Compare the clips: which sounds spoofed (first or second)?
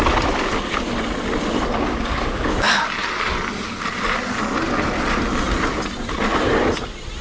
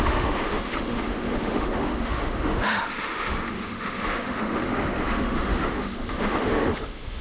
second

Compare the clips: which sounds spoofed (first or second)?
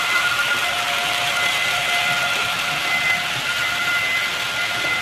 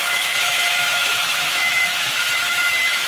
second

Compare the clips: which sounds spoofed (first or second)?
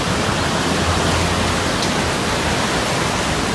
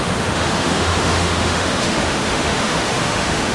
second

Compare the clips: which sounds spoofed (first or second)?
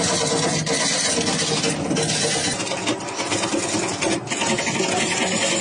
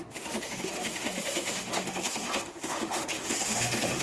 second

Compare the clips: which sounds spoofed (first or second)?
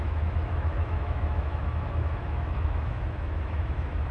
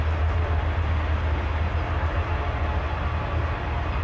first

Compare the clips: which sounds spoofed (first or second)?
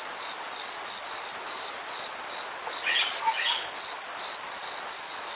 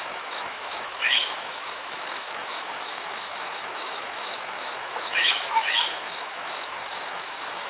second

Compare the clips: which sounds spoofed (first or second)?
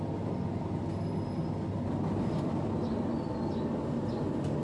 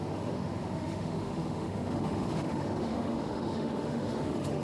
second